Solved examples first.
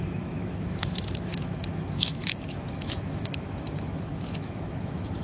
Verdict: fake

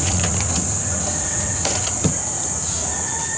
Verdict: fake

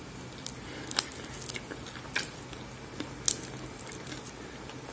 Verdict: real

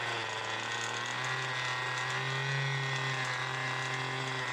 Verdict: real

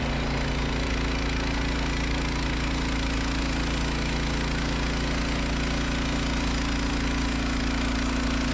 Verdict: real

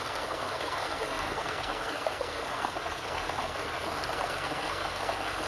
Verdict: fake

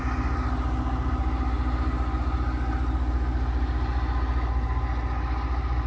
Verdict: real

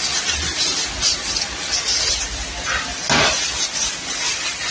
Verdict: real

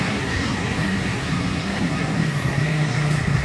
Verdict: fake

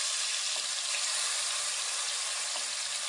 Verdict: real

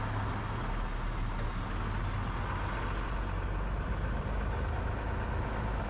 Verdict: real